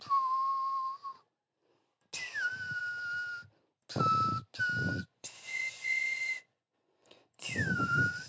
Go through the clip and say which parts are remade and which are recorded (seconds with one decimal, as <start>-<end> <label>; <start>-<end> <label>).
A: 0.0-4.9 recorded; 4.9-8.3 remade